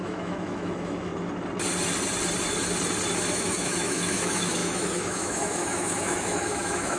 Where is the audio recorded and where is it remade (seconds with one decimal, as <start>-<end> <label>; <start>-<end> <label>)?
0.0-1.1 remade; 1.1-3.3 recorded; 3.3-7.0 remade